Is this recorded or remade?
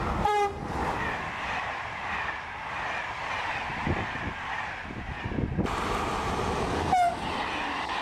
recorded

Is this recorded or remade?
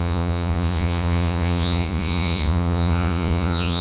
remade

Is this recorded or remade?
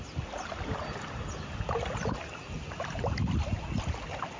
recorded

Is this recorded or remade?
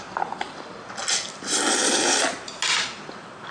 recorded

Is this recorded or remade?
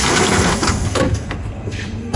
remade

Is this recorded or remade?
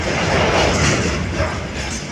recorded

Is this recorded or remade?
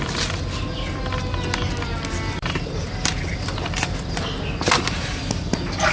recorded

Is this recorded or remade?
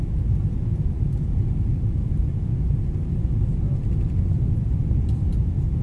recorded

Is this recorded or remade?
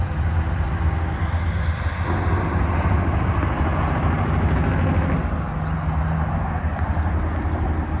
recorded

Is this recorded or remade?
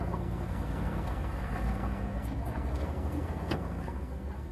remade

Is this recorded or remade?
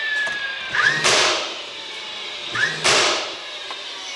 remade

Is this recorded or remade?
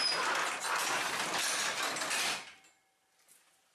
recorded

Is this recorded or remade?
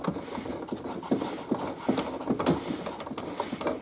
recorded